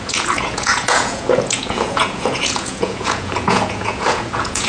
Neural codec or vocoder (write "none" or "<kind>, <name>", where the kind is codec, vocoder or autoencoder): vocoder, Vocos